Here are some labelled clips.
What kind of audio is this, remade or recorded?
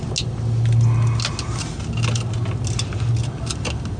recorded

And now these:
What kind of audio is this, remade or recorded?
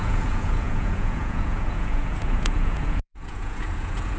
remade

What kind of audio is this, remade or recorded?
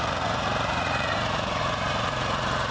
remade